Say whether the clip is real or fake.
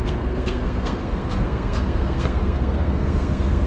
fake